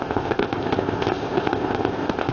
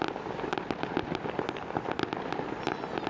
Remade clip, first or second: first